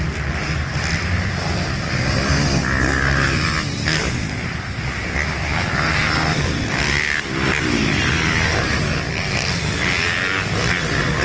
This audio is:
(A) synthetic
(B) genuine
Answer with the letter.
B